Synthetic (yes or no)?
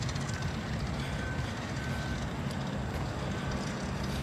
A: no